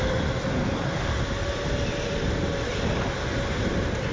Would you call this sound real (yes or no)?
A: yes